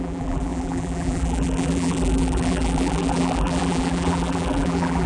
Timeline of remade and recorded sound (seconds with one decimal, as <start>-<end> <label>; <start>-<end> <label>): 0.0-5.1 remade